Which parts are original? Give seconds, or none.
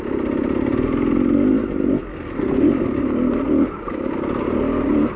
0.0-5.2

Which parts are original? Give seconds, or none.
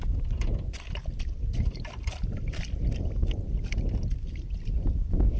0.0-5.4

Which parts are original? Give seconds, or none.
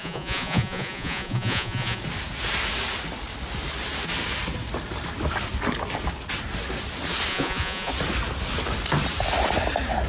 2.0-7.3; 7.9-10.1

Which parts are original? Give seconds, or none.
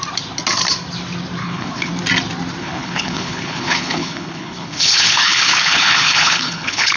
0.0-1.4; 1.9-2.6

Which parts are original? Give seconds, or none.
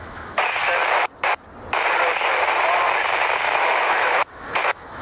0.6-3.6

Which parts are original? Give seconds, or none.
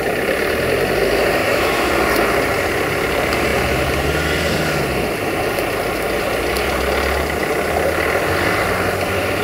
0.0-1.4; 1.9-9.4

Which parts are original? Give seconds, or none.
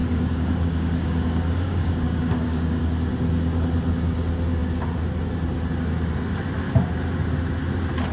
2.8-8.1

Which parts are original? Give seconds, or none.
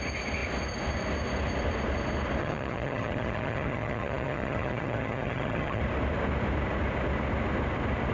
0.0-2.4; 5.8-8.1